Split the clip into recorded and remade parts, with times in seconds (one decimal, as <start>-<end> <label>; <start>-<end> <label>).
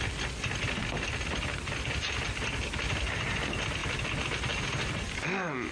0.0-5.7 recorded